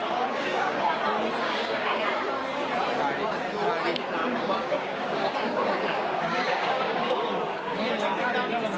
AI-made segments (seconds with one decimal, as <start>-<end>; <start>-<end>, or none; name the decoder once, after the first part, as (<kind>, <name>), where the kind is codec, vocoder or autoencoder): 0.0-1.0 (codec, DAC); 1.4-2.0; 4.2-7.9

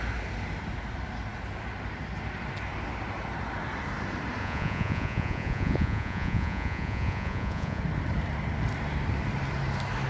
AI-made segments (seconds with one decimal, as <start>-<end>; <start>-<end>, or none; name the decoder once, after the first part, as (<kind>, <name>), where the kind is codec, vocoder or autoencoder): 4.4-7.8 (vocoder, Vocos)

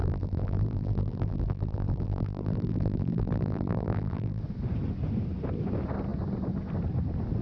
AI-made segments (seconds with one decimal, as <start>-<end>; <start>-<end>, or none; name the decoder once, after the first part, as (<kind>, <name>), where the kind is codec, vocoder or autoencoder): 0.0-4.4 (vocoder, BigVGAN v2)